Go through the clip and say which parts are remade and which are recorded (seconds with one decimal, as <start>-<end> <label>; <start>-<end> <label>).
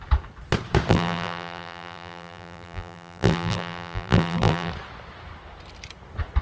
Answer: 0.0-0.9 recorded; 0.9-4.7 remade; 4.7-6.4 recorded